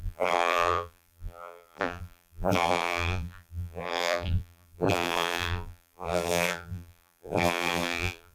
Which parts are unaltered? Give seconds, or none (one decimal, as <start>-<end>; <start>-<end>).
none